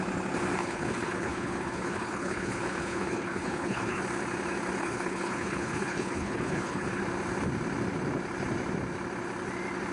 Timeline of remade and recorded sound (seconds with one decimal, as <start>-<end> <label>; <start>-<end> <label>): 0.0-0.6 recorded; 0.6-4.0 remade; 4.0-4.8 recorded; 4.8-7.0 remade; 7.0-9.9 recorded